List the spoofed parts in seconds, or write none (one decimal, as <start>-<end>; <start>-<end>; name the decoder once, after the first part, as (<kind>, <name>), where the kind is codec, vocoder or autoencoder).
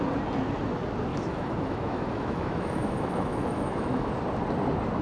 1.1-4.1 (autoencoder, DAC-VAE)